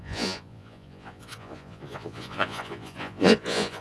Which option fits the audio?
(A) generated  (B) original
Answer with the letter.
A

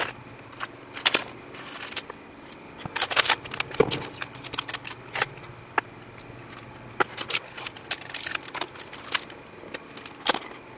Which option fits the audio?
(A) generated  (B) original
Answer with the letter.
B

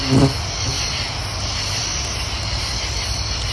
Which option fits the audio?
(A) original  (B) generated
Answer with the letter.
A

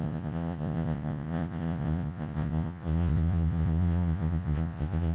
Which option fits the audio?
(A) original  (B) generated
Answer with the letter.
B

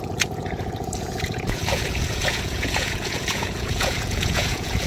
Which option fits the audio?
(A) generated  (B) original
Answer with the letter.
A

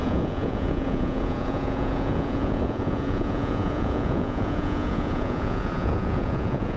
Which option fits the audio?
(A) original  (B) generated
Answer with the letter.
B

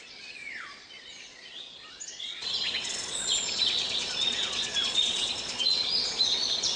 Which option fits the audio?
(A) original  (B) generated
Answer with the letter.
B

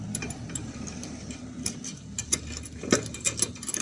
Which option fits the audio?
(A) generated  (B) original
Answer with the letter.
B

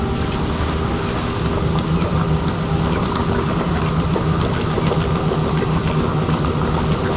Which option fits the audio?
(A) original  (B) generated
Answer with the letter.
A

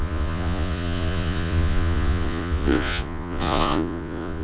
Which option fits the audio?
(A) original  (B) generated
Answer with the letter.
B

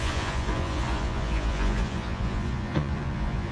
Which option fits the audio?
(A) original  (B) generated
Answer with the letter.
B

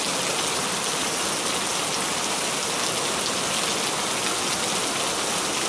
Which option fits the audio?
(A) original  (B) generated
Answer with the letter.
A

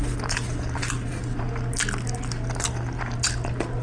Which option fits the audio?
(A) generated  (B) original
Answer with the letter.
B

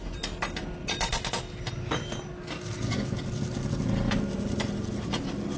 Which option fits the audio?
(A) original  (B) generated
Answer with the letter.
A